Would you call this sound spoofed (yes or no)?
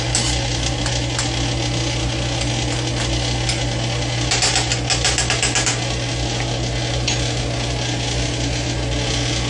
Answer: no